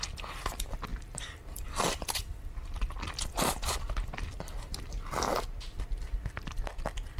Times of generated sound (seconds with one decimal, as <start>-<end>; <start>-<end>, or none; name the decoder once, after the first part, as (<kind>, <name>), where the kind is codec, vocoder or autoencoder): 0.9-5.2 (vocoder, BigVGAN v2)